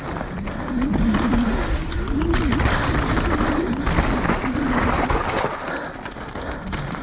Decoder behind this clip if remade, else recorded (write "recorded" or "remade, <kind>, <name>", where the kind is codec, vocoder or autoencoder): recorded